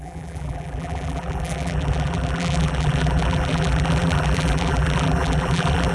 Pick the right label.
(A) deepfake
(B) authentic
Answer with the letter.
A